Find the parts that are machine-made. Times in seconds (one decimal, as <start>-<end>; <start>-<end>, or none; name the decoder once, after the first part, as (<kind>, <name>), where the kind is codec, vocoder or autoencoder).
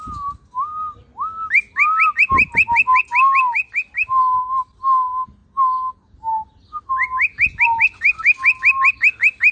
none